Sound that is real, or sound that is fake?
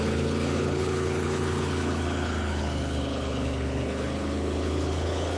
fake